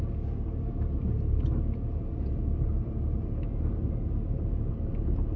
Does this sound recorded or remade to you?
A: remade